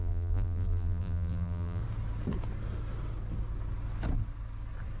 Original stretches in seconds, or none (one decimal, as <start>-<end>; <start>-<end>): 1.8-5.0

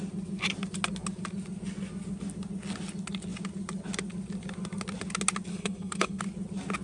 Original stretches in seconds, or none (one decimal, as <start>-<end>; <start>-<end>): 0.0-5.5; 6.2-6.8

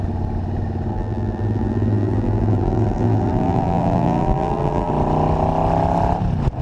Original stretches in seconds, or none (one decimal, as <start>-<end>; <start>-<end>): 0.0-0.9; 4.9-6.6

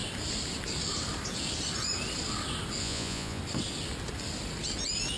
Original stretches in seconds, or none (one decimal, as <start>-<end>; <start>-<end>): 0.0-2.8; 3.4-5.2

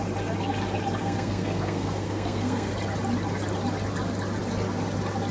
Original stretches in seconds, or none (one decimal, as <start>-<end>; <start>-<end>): 0.0-1.0; 2.7-5.3

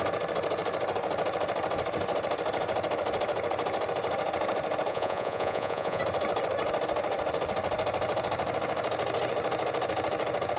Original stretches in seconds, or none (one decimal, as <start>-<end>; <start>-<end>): 0.0-4.9; 6.0-10.6

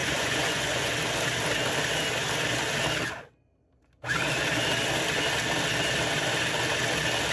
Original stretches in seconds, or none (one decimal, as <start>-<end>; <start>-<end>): 0.9-7.3